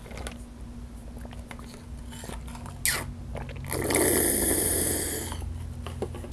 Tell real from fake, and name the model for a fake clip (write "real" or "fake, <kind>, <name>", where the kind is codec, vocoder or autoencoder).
real